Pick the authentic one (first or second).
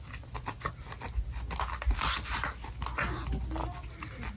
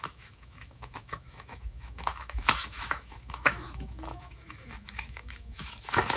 first